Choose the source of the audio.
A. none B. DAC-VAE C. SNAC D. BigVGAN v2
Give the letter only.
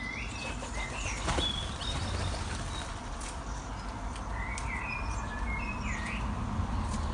A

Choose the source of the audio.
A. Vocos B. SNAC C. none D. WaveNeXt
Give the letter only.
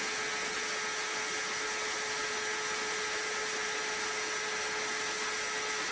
C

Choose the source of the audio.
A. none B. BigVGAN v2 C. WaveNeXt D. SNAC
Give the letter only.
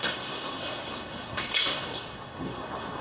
D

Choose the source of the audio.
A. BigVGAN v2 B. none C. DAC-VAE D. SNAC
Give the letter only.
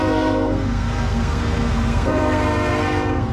D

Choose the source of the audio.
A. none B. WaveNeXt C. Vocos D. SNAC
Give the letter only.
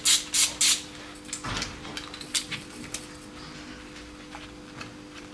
A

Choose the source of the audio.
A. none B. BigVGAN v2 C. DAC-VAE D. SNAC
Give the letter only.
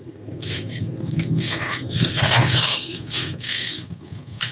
D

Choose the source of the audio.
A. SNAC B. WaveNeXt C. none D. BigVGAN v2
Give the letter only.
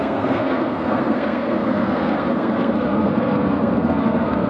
A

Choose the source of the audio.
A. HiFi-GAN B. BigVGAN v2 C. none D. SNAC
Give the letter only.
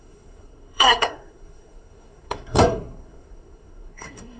D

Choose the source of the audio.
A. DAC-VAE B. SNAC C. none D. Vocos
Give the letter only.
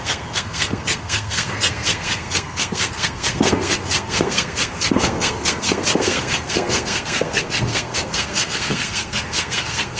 B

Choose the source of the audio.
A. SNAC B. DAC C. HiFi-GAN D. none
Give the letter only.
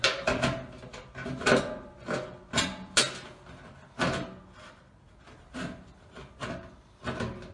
D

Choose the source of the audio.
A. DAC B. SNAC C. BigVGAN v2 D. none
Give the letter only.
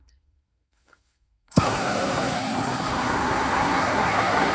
B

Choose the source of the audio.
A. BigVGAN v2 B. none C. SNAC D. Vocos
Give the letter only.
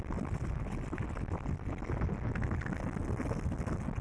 B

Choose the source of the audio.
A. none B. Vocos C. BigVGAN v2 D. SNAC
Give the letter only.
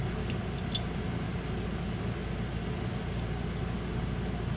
A